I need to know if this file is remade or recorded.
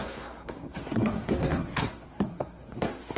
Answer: remade